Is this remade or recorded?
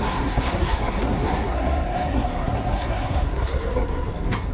remade